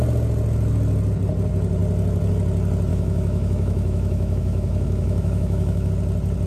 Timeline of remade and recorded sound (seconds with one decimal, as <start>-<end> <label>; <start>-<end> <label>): 0.0-2.9 recorded; 2.9-5.9 remade; 5.9-6.5 recorded